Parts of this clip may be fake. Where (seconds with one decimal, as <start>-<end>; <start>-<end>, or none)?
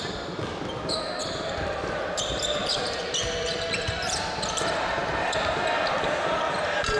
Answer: 1.2-5.4